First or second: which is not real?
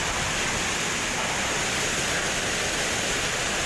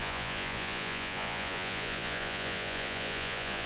second